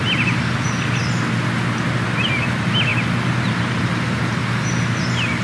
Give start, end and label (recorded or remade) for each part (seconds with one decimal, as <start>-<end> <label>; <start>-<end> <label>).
0.0-2.9 recorded; 2.9-3.7 remade; 3.7-4.4 recorded; 4.4-5.4 remade